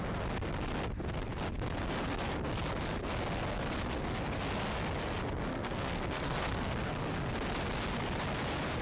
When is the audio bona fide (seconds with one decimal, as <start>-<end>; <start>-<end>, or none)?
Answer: 0.0-5.5; 7.0-8.8